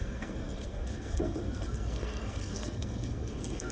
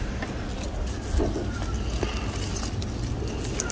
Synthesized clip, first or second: first